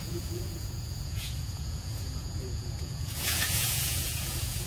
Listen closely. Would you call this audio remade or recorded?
remade